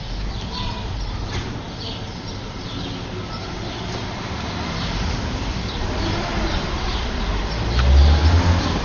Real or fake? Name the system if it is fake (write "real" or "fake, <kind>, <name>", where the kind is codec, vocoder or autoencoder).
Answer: real